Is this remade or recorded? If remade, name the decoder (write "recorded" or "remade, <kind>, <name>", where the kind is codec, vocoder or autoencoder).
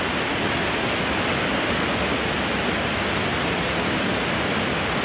recorded